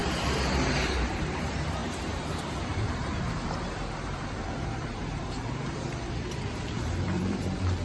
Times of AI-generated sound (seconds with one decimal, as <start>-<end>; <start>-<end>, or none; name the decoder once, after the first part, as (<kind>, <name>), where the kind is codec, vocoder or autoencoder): 0.0-7.8 (vocoder, BigVGAN v2)